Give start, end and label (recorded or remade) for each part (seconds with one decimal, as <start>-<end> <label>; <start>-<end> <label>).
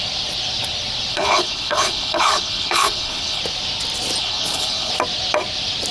0.0-1.1 recorded; 1.1-3.4 remade; 3.4-4.2 recorded; 4.2-4.9 remade; 4.9-5.9 recorded